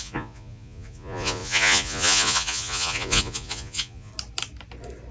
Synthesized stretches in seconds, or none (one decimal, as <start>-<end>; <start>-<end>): 0.0-4.1